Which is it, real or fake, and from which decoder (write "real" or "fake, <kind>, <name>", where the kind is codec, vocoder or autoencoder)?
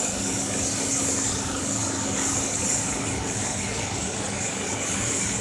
fake, codec, DAC